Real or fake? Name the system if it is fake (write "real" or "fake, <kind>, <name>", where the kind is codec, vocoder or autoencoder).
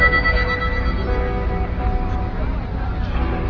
real